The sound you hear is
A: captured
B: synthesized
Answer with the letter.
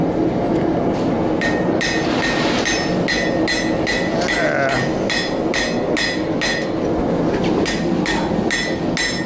A